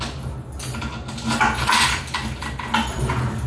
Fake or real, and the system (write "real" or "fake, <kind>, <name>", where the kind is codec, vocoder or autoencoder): real